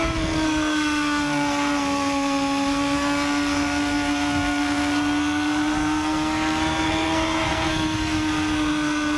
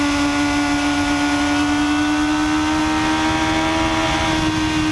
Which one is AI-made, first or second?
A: first